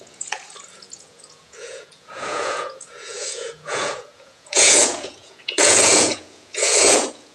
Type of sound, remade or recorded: remade